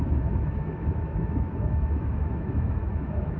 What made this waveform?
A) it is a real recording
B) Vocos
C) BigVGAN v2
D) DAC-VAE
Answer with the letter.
D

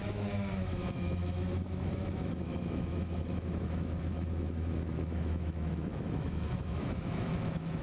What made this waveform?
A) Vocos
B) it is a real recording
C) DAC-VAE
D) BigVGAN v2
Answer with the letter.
C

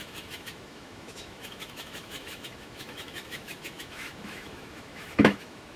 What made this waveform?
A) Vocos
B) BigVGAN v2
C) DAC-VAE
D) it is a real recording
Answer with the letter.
C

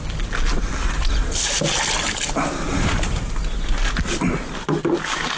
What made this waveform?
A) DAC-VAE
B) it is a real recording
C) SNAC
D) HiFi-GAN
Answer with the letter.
B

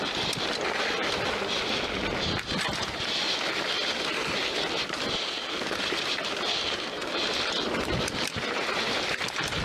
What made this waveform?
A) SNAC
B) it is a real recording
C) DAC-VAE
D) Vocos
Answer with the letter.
B